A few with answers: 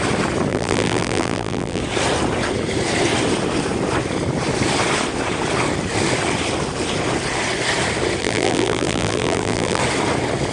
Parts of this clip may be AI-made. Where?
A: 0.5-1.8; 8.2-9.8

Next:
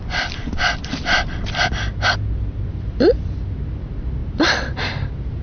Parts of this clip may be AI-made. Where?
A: 0.0-5.4

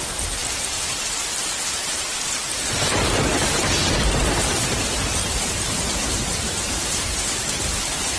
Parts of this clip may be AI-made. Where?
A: 0.0-5.2; 6.6-8.2

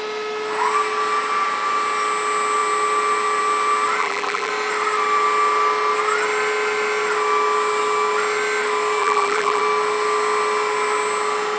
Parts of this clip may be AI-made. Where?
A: 4.0-4.5; 9.0-9.6

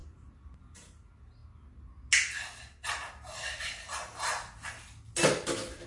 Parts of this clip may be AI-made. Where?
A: none